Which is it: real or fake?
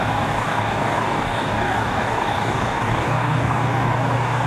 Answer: fake